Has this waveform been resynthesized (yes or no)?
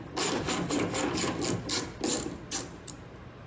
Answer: no